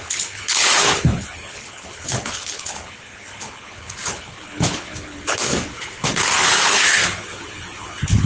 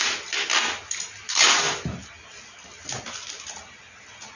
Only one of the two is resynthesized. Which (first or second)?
first